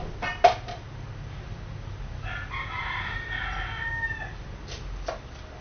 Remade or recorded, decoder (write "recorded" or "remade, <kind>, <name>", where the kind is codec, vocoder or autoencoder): recorded